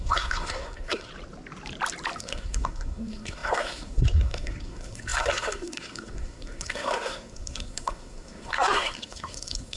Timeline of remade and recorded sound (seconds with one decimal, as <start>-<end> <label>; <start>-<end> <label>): 0.0-1.1 remade; 1.1-2.2 recorded; 2.2-9.8 remade